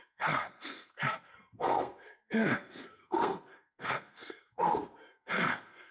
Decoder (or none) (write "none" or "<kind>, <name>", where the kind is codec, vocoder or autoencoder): codec, SNAC